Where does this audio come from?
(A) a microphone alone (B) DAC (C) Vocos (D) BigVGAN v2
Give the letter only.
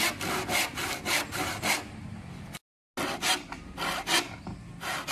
A